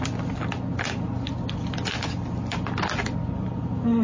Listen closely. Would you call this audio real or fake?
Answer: real